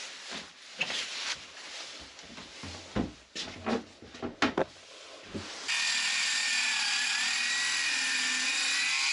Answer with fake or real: real